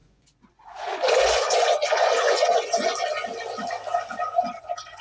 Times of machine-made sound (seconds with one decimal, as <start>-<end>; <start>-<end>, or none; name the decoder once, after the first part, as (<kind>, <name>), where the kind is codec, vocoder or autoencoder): 0.0-2.9 (vocoder, Vocos); 4.6-5.0